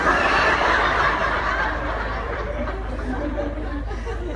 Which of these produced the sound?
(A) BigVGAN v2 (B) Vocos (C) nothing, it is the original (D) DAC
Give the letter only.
A